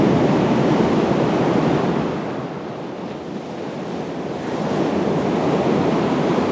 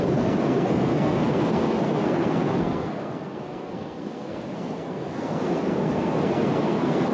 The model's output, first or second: second